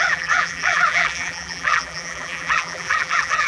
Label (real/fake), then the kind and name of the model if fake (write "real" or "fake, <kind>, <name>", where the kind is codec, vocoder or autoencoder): fake, vocoder, BigVGAN v2